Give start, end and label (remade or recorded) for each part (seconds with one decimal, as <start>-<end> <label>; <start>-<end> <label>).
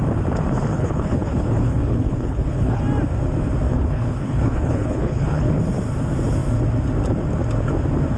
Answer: 0.0-0.7 recorded; 0.7-2.8 remade; 2.8-3.7 recorded; 3.7-5.5 remade; 5.5-8.2 recorded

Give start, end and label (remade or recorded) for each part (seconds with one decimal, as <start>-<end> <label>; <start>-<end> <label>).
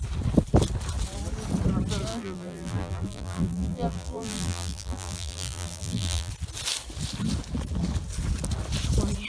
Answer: 0.0-2.1 recorded; 2.1-6.3 remade; 6.3-9.3 recorded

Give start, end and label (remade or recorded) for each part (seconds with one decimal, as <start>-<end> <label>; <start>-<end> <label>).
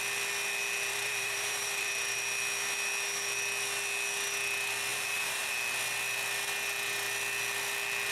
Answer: 0.0-0.9 recorded; 0.9-1.9 remade; 1.9-4.9 recorded; 4.9-5.5 remade; 5.5-8.1 recorded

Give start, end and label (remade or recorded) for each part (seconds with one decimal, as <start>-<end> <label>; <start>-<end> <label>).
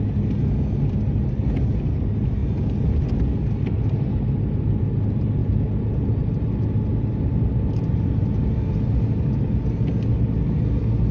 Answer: 0.0-5.4 recorded; 5.4-6.4 remade; 6.4-7.1 recorded; 7.1-9.2 remade; 9.2-11.1 recorded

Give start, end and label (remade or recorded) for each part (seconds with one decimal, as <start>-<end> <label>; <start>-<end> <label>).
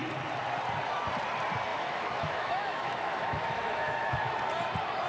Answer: 0.0-1.7 recorded; 1.7-4.3 remade; 4.3-5.1 recorded